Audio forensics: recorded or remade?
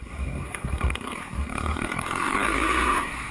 remade